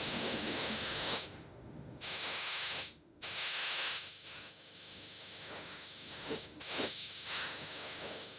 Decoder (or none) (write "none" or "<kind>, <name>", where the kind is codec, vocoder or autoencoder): autoencoder, DAC-VAE